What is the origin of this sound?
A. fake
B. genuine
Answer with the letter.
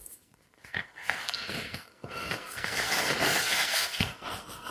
A